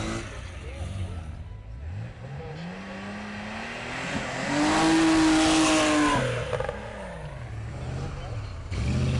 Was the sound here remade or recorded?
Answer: recorded